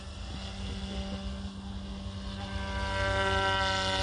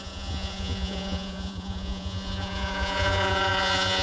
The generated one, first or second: second